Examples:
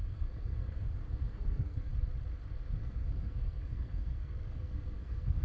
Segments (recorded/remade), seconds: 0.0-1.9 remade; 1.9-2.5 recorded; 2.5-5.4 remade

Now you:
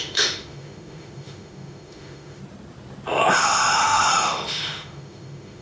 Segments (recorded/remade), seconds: 0.0-2.4 remade; 2.4-3.3 recorded; 3.3-5.6 remade

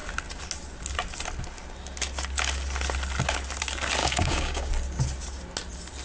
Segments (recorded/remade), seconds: 0.0-4.0 recorded; 4.0-4.7 remade; 4.7-6.0 recorded

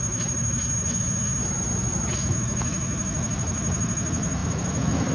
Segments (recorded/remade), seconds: 0.0-1.4 remade; 1.4-2.1 recorded; 2.1-5.1 remade

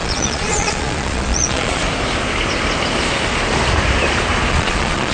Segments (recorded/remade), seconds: 0.0-1.8 remade; 1.8-4.5 recorded; 4.5-5.1 remade